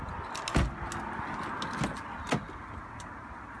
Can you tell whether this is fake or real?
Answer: real